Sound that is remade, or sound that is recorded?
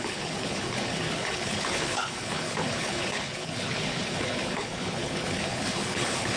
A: remade